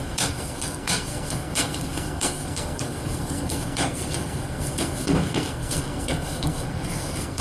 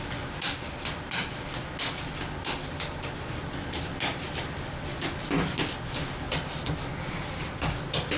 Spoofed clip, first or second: first